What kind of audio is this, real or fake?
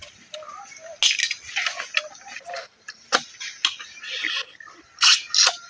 real